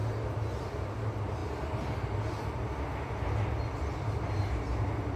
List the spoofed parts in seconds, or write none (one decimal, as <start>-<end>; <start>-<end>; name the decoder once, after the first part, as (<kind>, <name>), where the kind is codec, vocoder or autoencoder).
none